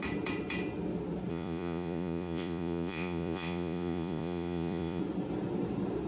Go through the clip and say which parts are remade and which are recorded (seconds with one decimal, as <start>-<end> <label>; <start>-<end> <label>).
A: 0.0-1.3 recorded; 1.3-5.0 remade; 5.0-6.1 recorded